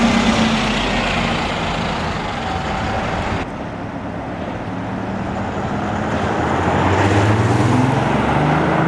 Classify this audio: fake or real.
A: real